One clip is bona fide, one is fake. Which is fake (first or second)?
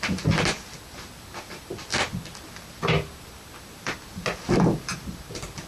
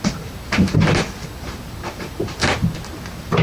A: second